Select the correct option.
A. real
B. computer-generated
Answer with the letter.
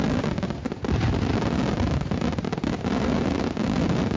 A